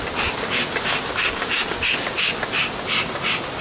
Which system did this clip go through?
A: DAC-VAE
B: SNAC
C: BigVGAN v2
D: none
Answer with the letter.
D